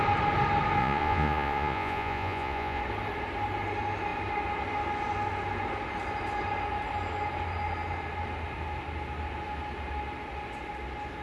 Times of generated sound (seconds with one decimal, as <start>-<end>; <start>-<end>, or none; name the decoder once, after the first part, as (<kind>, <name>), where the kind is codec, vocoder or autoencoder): 0.8-2.8 (vocoder, Vocos)